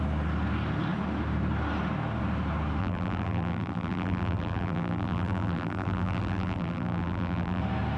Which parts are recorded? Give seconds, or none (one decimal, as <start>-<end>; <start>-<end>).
0.0-2.8; 7.6-8.0